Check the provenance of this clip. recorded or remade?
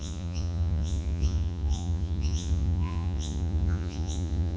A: remade